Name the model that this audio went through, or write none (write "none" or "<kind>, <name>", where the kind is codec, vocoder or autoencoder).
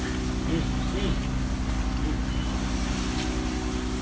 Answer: none